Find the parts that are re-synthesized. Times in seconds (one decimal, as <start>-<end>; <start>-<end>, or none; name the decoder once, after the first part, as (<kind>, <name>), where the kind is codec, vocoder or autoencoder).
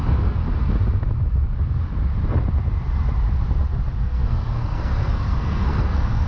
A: 0.0-0.4 (codec, SNAC); 4.0-6.3